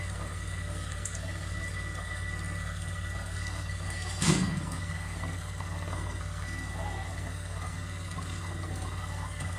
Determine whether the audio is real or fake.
fake